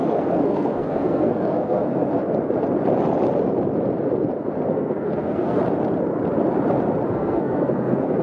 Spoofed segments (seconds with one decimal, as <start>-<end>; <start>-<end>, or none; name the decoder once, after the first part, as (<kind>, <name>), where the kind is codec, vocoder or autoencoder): 0.0-2.2 (codec, SNAC); 4.7-5.6; 7.1-8.2